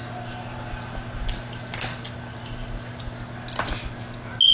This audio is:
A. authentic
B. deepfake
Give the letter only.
A